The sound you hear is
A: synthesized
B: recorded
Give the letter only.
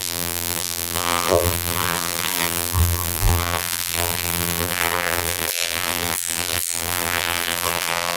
A